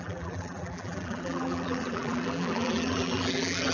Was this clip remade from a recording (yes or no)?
yes